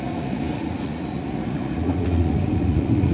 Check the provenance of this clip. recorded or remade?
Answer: remade